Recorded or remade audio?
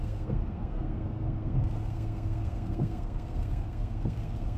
remade